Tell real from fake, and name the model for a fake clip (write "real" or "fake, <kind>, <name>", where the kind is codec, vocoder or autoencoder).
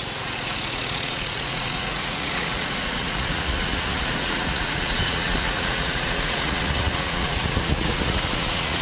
fake, vocoder, Vocos